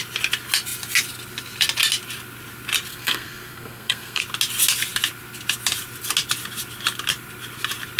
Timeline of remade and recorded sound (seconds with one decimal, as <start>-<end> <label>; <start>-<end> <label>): 0.0-2.9 recorded; 2.9-4.2 remade; 4.2-8.0 recorded